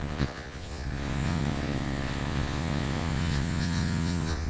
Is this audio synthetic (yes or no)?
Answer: yes